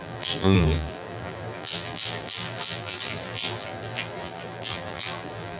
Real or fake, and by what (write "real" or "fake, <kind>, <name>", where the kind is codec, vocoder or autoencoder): fake, vocoder, BigVGAN v2